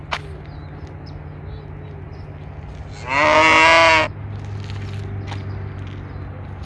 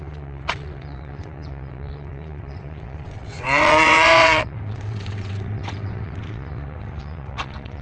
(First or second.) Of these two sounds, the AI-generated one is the second